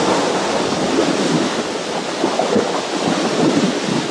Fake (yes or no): no